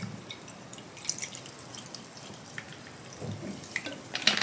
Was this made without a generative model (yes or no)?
no